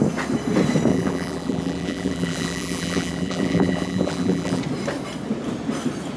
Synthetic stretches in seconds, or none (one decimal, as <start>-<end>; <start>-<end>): 0.9-4.6